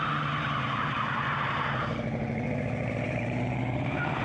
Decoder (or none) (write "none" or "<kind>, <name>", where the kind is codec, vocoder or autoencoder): vocoder, BigVGAN v2